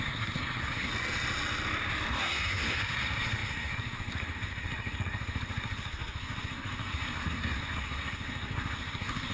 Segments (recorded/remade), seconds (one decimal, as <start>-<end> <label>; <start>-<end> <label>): 0.0-0.9 remade; 0.9-2.2 recorded; 2.2-9.3 remade